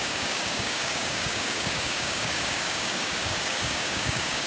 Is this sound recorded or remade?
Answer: remade